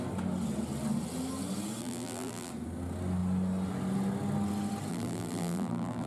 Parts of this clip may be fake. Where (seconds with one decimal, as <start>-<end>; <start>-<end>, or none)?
1.8-2.5; 4.9-6.1